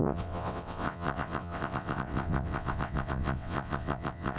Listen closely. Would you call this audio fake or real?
fake